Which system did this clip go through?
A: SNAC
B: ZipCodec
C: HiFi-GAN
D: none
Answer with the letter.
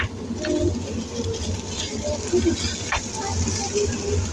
D